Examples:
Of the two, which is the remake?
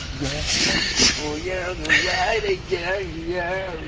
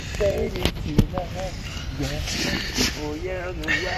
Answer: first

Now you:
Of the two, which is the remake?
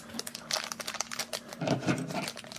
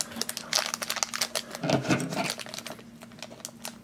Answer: first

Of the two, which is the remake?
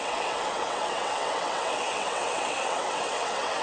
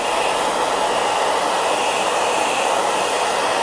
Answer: first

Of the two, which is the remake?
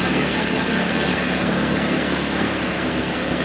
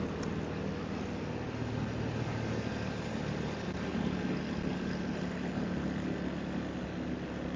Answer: first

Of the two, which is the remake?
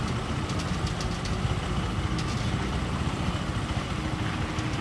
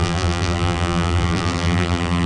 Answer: second